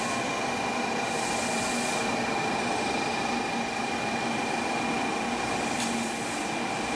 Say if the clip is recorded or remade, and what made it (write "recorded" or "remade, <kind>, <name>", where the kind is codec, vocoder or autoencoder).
recorded